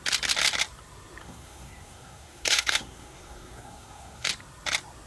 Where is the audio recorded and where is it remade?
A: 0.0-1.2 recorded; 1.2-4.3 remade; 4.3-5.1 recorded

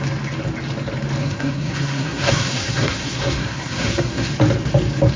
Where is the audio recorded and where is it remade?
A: 0.0-1.2 recorded; 1.2-4.3 remade; 4.3-5.2 recorded